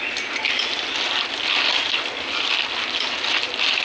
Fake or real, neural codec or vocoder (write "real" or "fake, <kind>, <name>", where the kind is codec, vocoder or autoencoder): real